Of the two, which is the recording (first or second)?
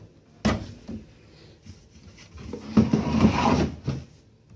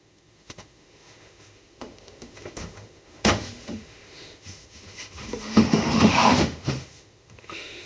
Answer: first